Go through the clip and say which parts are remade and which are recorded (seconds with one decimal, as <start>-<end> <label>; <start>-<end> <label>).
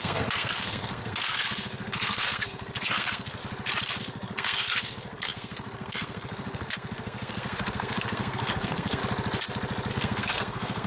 0.0-3.4 remade; 3.4-4.0 recorded; 4.0-9.0 remade; 9.0-9.9 recorded; 9.9-10.9 remade